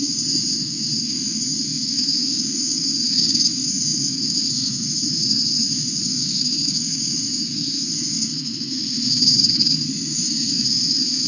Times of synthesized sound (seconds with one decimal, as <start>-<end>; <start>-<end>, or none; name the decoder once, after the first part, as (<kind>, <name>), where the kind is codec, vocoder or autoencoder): 0.0-11.3 (codec, SNAC)